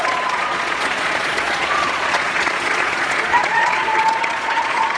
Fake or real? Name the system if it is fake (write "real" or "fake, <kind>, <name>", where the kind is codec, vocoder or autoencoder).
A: fake, vocoder, Vocos